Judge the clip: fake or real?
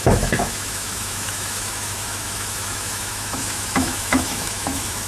fake